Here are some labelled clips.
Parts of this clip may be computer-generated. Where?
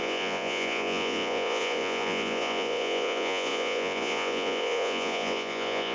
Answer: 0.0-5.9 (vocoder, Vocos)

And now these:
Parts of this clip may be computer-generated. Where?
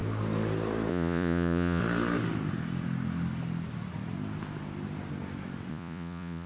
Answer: 0.9-1.8 (vocoder, Vocos); 5.7-6.5